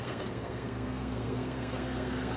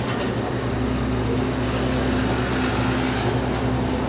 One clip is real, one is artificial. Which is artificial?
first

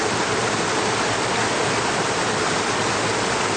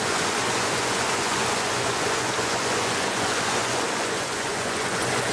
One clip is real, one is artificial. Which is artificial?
second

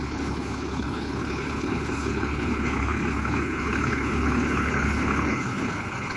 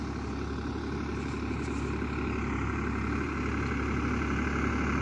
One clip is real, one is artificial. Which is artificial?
first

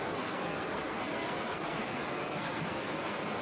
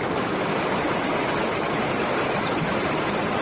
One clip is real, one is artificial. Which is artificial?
first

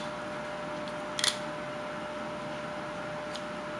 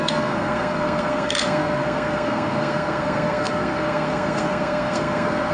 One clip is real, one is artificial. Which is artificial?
second